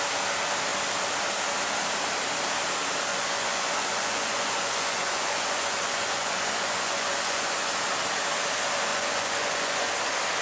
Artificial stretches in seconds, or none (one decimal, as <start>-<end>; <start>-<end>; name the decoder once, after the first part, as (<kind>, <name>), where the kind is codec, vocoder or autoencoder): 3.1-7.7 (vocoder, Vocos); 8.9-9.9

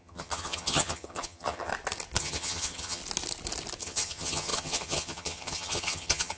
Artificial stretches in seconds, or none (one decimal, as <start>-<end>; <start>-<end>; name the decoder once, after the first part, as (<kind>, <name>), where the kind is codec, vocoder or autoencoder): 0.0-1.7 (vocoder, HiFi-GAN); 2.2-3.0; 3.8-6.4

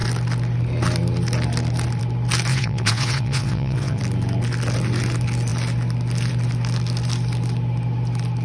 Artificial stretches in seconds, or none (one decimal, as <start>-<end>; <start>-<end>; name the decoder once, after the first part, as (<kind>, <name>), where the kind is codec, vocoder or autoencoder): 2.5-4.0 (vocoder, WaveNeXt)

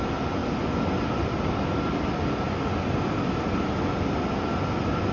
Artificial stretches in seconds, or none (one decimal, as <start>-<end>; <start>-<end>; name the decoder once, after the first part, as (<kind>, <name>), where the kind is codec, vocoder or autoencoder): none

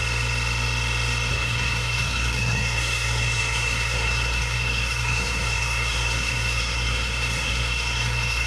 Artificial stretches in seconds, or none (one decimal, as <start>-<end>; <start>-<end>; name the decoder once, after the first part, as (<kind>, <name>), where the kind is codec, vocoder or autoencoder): 1.3-8.5 (codec, SNAC)

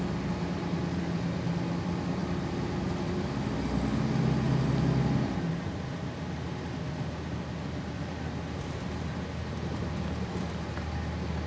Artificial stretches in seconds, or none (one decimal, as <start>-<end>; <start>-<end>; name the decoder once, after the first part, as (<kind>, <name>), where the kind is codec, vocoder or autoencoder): none